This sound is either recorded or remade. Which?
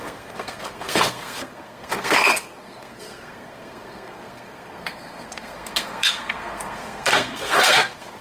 remade